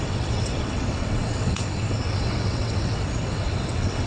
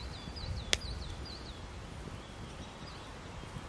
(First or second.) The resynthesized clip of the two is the first